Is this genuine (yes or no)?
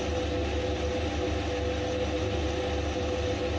yes